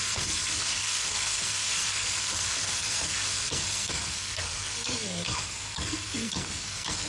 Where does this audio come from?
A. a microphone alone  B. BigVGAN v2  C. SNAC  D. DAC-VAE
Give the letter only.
C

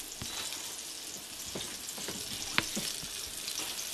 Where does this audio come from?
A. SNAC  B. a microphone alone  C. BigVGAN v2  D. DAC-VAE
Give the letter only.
B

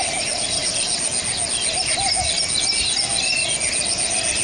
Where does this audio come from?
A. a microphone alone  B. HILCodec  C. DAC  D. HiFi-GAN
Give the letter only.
A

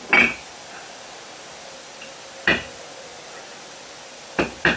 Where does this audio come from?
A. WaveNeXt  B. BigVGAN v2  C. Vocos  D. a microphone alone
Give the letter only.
D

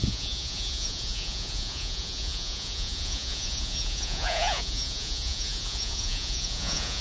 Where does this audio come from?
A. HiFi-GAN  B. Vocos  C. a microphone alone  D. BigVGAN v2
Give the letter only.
B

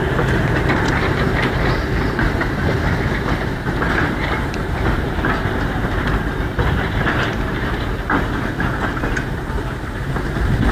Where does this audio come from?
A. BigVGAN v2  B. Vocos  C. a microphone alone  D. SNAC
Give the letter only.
A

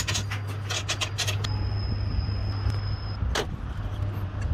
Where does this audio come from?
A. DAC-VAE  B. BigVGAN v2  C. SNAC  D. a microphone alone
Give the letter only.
D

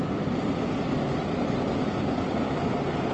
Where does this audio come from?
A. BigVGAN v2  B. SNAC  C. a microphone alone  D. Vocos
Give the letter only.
A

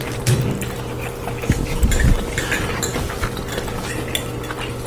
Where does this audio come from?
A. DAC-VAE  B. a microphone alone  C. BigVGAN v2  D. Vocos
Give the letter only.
B